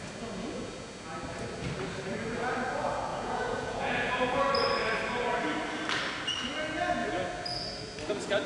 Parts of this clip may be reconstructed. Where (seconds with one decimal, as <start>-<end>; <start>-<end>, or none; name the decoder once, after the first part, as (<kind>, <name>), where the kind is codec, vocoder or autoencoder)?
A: 3.1-4.4 (vocoder, Vocos)